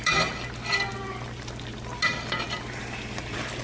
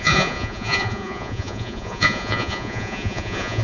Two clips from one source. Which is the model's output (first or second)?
second